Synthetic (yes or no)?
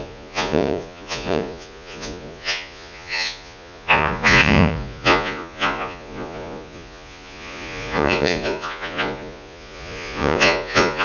yes